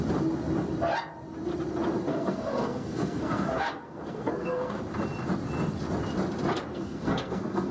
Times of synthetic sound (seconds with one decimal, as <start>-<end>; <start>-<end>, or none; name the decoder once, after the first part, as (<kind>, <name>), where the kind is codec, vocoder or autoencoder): 2.1-4.8 (codec, SNAC); 6.7-7.7